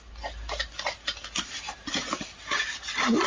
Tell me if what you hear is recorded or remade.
recorded